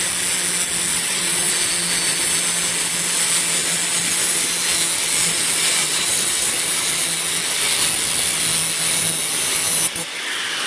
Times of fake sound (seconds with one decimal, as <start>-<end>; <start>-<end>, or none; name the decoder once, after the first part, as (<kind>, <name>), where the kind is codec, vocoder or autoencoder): 0.9-1.5 (vocoder, WaveNeXt); 5.8-6.5